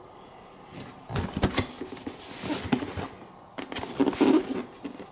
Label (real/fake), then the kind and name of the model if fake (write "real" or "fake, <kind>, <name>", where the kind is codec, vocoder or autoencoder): real